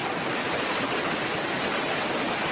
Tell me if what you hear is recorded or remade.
recorded